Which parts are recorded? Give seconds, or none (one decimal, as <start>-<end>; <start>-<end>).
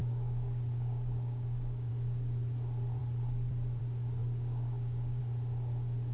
1.9-4.2; 5.2-6.1